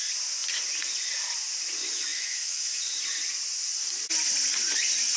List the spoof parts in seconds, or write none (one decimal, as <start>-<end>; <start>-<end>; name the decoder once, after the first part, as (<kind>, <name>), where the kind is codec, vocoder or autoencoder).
1.8-2.8 (autoencoder, DAC-VAE)